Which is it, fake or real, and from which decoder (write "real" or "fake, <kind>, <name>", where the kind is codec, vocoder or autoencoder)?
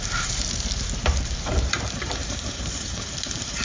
fake, vocoder, BigVGAN v2